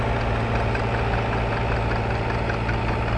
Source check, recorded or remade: recorded